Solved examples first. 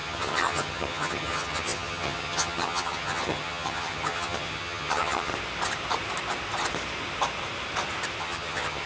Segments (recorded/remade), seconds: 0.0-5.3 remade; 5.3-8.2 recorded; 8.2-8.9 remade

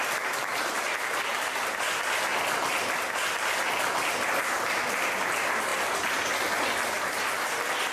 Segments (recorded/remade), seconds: 0.0-7.9 recorded

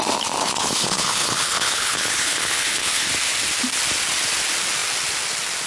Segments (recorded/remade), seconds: 0.0-0.4 recorded; 0.4-3.1 remade; 3.1-5.7 recorded

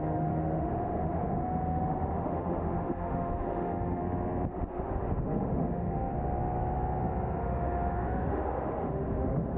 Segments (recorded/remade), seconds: 0.0-4.0 remade; 4.0-4.5 recorded; 4.5-6.1 remade; 6.1-7.4 recorded; 7.4-9.6 remade

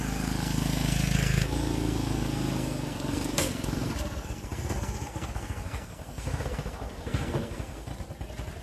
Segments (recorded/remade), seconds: 0.0-7.9 remade; 7.9-8.6 recorded